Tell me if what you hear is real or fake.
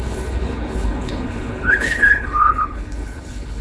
fake